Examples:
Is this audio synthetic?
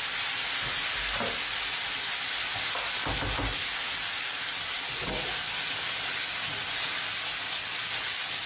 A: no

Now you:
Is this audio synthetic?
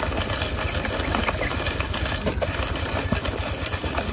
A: no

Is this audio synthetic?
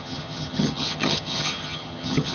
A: yes